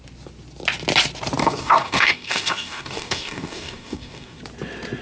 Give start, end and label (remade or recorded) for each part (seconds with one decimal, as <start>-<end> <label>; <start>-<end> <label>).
0.0-1.4 recorded; 1.4-4.4 remade; 4.4-5.0 recorded